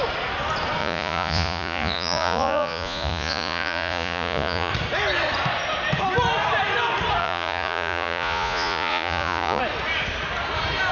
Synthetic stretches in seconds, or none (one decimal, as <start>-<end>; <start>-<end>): 0.8-4.7; 7.2-9.6